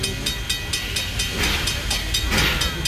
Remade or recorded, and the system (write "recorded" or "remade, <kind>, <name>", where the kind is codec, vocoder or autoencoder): recorded